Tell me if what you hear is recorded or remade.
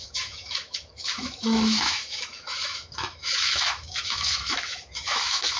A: remade